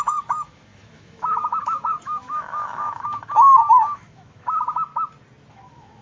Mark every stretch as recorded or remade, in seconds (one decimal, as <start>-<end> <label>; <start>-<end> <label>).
0.0-4.9 remade; 4.9-5.5 recorded; 5.5-6.0 remade